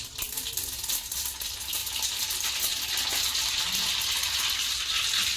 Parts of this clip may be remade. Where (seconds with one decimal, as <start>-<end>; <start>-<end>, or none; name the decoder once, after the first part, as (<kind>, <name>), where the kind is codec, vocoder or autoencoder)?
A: none